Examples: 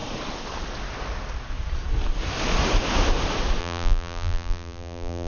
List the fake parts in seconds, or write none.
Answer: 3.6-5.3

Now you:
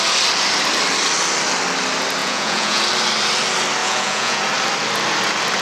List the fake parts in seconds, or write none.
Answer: 2.2-2.8; 3.8-4.4

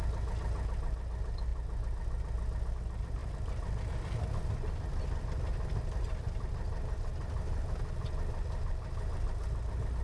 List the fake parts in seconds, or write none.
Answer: 3.2-3.9

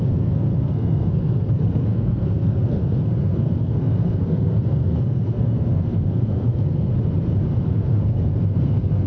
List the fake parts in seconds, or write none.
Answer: 0.0-6.9; 7.6-9.1

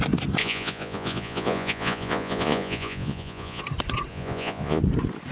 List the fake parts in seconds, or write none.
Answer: 0.4-3.6; 4.1-4.8

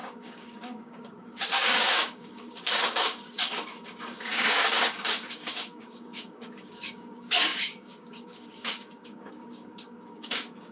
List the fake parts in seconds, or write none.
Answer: 0.0-10.7

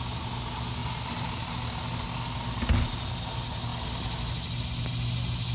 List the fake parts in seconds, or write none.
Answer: none